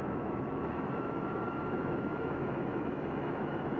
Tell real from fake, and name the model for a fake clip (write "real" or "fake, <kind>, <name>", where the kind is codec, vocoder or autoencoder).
fake, autoencoder, DAC-VAE